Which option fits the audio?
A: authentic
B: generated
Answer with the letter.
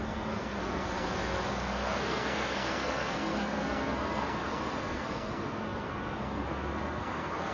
B